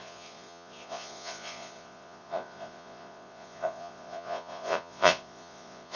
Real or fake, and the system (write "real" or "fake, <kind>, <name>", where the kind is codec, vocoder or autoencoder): fake, vocoder, Vocos